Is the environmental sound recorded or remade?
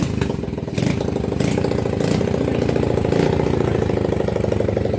recorded